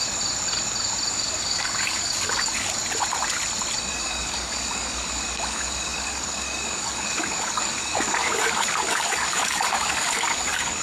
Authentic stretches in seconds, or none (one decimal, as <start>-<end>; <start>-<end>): 0.0-1.1; 2.8-3.9

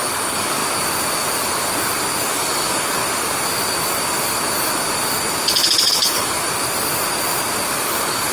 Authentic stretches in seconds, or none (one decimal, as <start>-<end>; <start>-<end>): 0.6-2.3; 3.0-5.9; 6.4-7.7

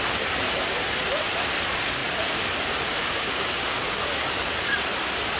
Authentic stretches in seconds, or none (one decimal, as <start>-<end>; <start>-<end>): 0.0-3.0; 4.0-5.4

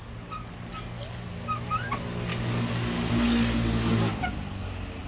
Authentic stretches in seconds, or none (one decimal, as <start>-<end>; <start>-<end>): 0.0-2.3; 3.1-5.1